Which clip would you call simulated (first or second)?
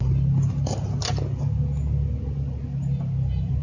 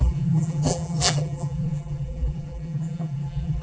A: second